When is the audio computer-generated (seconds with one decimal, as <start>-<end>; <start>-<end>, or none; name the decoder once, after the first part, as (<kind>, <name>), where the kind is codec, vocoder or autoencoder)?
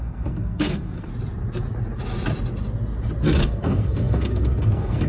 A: 0.0-1.1 (codec, SNAC); 3.4-5.1